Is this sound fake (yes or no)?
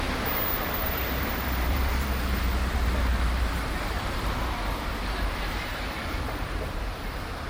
yes